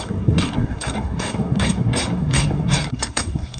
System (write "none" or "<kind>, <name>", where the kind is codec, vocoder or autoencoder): codec, SNAC